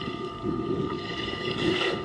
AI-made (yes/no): yes